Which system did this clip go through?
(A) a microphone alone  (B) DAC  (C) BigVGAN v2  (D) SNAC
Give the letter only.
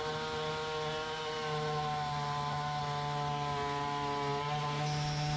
A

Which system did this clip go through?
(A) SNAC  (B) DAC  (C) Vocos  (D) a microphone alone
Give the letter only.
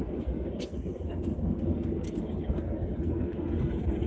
A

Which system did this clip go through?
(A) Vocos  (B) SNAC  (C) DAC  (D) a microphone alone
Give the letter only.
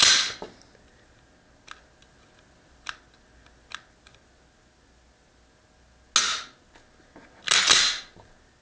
D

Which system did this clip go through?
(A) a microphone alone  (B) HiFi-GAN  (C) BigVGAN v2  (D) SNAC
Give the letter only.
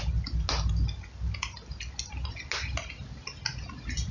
A